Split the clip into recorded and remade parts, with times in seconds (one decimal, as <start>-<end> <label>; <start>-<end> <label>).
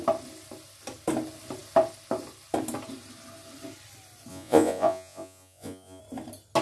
0.0-4.3 recorded; 4.3-6.0 remade; 6.0-6.6 recorded